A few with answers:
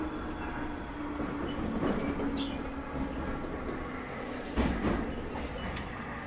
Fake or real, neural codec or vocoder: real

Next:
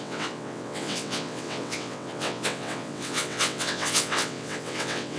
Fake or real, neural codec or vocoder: fake, vocoder, WaveNeXt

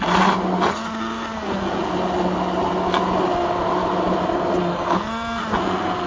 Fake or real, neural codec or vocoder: real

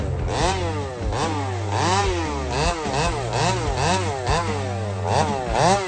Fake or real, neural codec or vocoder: real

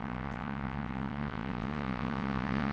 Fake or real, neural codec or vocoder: fake, vocoder, WaveNeXt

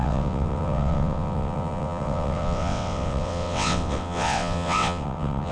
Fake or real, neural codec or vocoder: fake, vocoder, WaveNeXt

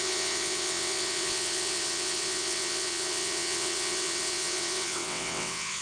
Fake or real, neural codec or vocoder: fake, vocoder, WaveNeXt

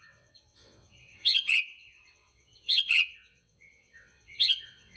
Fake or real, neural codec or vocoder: fake, vocoder, WaveNeXt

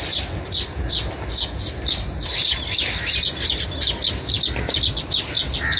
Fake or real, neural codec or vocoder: real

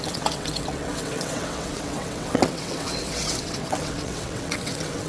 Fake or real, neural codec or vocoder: fake, vocoder, WaveNeXt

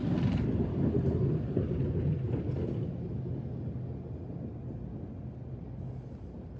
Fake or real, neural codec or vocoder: real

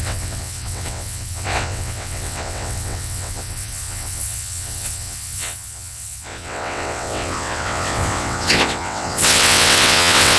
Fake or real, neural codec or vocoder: fake, vocoder, WaveNeXt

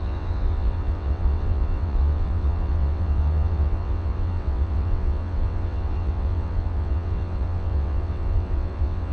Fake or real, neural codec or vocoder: fake, vocoder, WaveNeXt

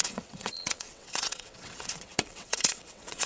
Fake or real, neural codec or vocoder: fake, vocoder, WaveNeXt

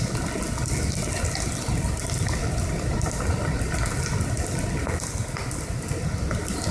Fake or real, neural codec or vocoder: real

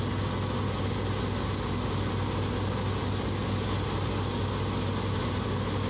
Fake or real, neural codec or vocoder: real